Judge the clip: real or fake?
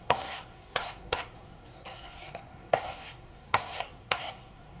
fake